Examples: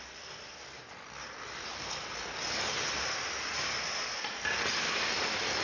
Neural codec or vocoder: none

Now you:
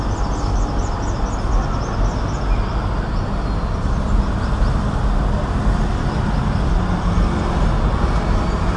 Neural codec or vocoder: none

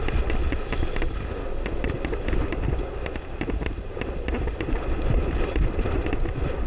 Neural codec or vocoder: none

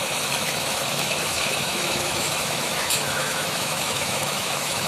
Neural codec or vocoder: autoencoder, DAC-VAE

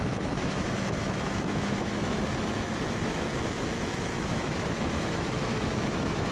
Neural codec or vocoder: autoencoder, DAC-VAE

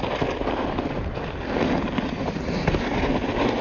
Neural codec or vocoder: none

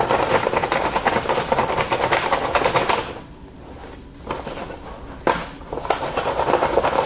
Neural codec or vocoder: none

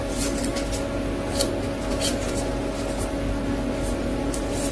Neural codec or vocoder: none